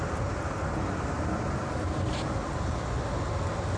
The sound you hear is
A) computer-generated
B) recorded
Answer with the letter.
B